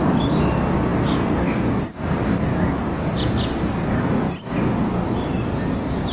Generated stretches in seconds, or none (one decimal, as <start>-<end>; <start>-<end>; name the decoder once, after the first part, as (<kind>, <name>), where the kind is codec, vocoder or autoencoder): none

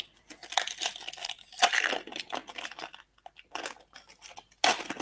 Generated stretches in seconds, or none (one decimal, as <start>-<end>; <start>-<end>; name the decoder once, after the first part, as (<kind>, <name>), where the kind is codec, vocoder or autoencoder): 1.2-1.7 (vocoder, BigVGAN v2)